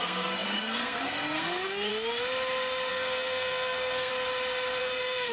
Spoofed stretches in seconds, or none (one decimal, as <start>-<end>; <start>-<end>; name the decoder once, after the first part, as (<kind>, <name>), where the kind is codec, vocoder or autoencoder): 0.0-1.9 (codec, SNAC); 2.9-4.1; 4.8-5.3